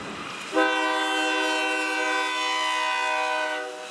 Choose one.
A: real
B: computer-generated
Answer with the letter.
A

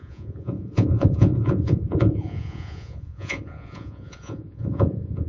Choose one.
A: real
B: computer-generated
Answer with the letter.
B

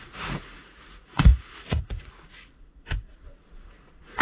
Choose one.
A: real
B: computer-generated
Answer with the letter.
B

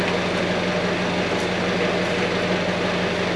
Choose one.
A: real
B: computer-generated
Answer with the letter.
A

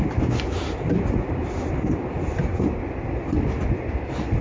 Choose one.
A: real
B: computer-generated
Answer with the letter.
A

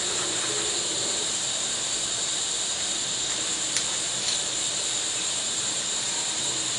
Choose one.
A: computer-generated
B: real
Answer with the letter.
B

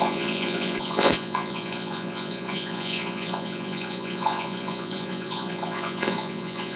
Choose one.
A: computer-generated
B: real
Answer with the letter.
A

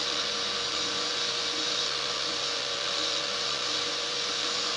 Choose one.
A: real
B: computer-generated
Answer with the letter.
B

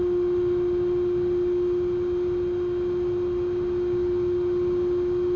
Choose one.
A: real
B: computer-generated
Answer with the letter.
A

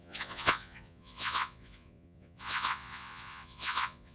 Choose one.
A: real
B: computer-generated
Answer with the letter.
B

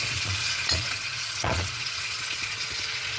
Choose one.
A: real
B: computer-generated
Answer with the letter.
B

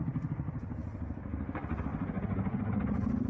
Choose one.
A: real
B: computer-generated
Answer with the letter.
A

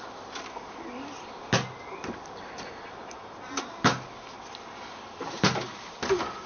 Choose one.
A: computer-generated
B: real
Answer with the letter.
B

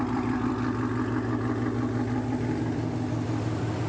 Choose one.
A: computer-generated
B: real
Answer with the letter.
B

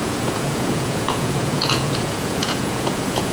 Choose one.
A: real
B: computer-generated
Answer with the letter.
B